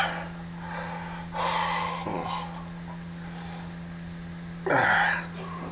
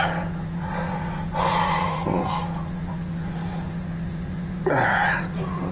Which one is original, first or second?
first